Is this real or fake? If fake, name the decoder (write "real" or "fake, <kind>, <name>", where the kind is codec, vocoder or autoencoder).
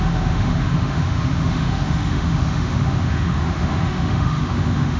fake, autoencoder, DAC-VAE